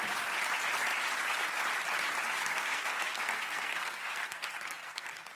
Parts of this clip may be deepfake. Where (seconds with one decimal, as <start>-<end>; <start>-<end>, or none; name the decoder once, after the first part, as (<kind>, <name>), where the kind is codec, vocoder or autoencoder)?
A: 2.4-5.4 (codec, SNAC)